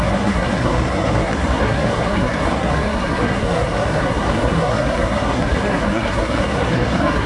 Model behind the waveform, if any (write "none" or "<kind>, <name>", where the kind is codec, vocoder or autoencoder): codec, SNAC